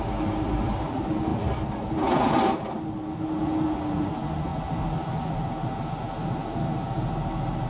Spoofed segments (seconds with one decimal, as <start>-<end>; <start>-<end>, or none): none